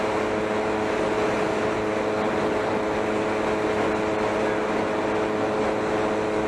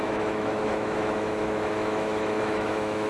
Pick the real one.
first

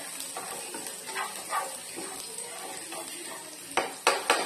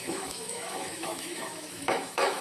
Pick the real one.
first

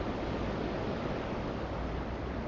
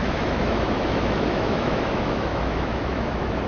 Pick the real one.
first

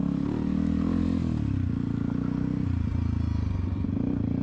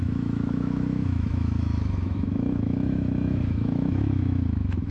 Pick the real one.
first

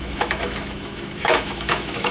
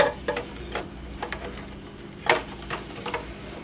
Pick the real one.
second